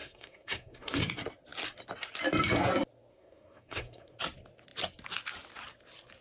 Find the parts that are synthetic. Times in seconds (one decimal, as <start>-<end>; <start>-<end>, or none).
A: 0.0-1.0; 3.1-4.2